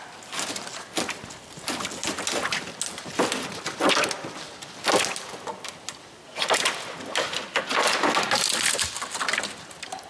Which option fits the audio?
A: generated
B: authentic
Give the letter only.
B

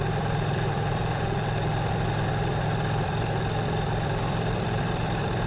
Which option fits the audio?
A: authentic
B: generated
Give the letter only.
B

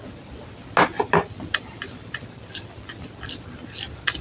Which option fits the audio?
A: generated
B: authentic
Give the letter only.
B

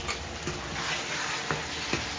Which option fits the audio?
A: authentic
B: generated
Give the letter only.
A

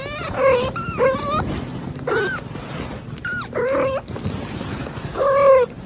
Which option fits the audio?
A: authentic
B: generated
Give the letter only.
A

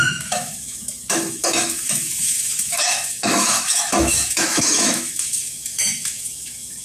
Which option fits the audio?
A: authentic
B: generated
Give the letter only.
B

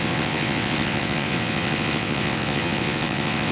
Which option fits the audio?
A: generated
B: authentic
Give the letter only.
A